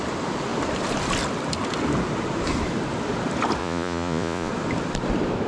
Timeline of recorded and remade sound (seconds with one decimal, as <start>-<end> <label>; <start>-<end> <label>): 0.0-3.6 recorded; 3.6-4.5 remade; 4.5-5.5 recorded